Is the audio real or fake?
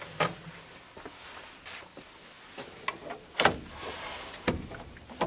real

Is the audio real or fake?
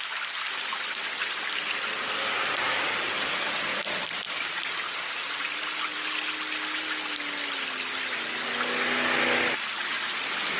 real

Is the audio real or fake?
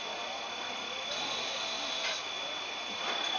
real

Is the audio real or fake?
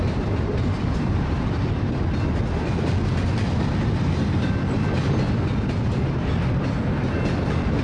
real